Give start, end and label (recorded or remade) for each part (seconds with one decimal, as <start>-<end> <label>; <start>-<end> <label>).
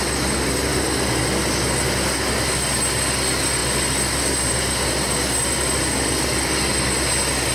0.0-7.5 recorded